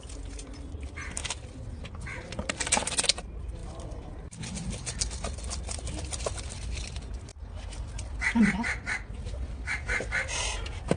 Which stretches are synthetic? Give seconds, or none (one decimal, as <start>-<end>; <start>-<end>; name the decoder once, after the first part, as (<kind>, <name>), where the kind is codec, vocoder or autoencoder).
none